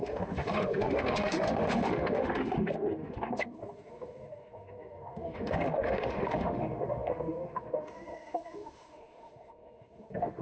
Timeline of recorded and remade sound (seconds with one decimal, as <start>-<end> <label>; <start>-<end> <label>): 0.0-10.4 remade